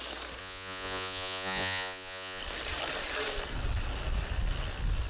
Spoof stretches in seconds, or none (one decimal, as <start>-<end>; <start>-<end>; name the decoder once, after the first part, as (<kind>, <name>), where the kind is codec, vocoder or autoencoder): 0.4-2.4 (vocoder, Vocos)

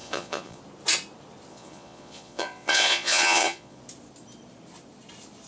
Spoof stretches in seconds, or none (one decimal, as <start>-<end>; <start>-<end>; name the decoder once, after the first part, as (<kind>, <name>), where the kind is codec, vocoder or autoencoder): 0.0-0.6 (vocoder, Vocos); 1.5-3.8